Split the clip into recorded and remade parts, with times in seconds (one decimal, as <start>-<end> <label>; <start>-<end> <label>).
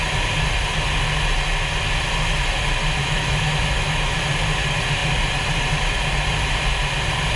0.0-3.0 recorded; 3.0-4.2 remade; 4.2-7.4 recorded